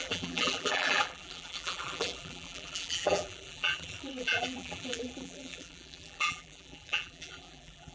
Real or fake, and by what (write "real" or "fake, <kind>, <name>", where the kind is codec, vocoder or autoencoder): fake, vocoder, BigVGAN v2